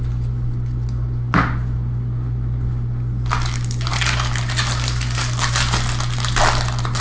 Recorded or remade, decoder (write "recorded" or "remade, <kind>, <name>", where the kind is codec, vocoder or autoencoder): recorded